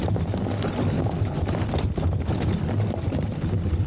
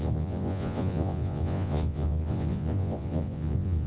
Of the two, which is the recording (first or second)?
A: first